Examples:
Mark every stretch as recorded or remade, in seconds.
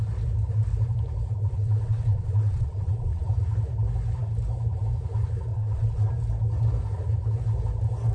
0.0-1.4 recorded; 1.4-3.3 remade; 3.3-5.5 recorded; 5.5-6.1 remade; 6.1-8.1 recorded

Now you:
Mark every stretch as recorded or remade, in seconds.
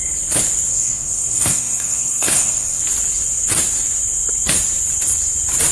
0.0-0.7 recorded; 0.7-2.8 remade; 2.8-5.7 recorded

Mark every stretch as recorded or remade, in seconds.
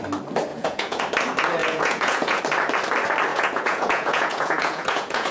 0.0-0.5 recorded; 0.5-1.0 remade; 1.0-1.6 recorded; 1.6-2.4 remade; 2.4-3.3 recorded; 3.3-5.3 remade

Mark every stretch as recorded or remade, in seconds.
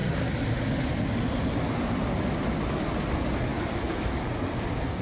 0.0-5.0 recorded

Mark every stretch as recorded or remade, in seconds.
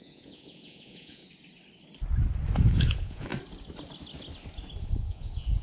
0.0-1.2 remade; 1.2-2.7 recorded; 2.7-3.3 remade; 3.3-4.8 recorded; 4.8-5.6 remade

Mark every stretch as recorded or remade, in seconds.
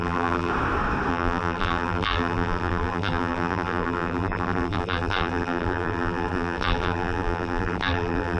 0.0-0.5 remade; 0.5-1.1 recorded; 1.1-8.4 remade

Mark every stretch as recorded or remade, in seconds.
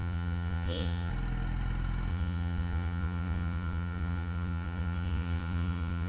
0.0-1.1 remade; 1.1-2.1 recorded; 2.1-6.1 remade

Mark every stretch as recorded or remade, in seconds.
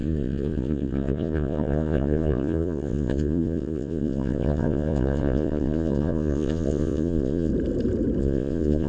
0.0-7.5 remade; 7.5-8.2 recorded; 8.2-8.9 remade